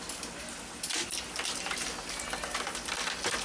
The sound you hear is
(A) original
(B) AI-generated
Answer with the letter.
A